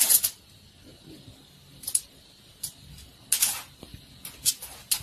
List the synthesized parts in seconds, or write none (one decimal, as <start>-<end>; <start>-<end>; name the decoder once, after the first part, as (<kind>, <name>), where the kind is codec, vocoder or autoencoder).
none